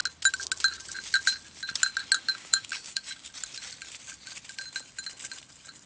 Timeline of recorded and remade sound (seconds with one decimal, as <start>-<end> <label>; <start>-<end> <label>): 0.0-2.3 recorded; 2.3-3.3 remade; 3.3-5.9 recorded